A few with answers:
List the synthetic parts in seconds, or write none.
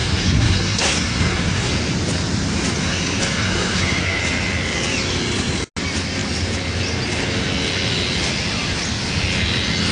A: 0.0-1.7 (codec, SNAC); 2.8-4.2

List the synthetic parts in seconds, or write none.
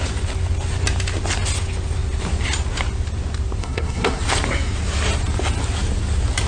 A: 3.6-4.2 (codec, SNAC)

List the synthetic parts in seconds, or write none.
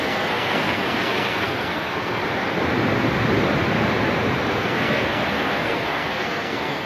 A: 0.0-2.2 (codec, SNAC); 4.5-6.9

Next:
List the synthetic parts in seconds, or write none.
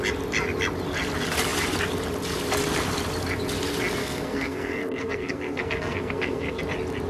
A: 4.0-6.6 (codec, SNAC)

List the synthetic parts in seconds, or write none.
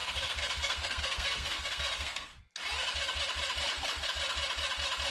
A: 0.0-2.4 (codec, SNAC)